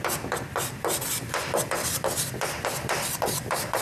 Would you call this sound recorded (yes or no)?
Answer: no